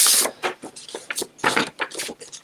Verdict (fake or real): real